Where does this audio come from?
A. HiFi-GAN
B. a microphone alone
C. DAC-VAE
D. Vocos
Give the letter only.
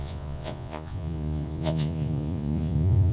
D